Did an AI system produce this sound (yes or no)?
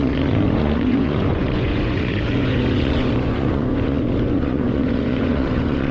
yes